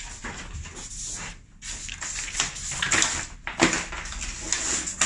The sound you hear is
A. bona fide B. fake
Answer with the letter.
A